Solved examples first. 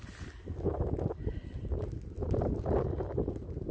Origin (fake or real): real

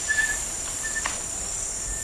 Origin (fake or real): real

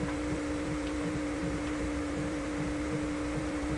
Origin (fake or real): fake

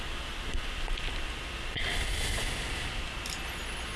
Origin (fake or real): real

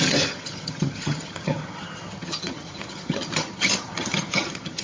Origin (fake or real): fake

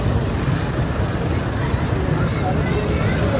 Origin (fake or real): real